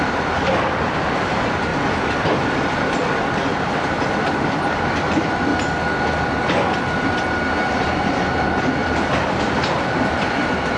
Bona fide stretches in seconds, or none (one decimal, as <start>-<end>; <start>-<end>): 5.5-7.7